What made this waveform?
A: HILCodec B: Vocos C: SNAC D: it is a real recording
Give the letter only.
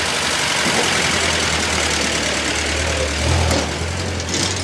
D